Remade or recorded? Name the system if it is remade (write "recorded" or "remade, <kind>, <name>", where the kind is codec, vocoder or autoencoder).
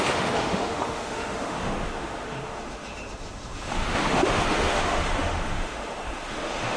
remade, autoencoder, DAC-VAE